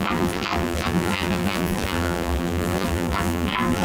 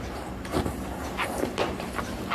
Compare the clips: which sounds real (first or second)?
second